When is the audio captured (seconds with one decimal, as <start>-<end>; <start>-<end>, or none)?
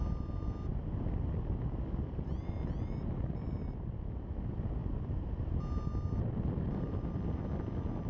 0.0-8.1